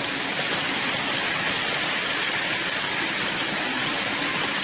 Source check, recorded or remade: recorded